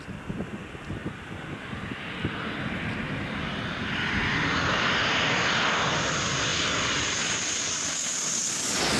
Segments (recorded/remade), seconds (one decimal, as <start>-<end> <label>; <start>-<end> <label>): 0.0-9.0 recorded